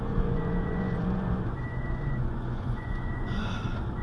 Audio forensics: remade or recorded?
remade